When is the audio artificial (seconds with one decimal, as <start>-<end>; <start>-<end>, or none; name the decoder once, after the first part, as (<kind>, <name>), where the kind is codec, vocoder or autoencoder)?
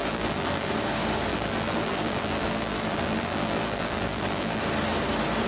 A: 0.0-0.7 (vocoder, BigVGAN v2); 1.3-4.6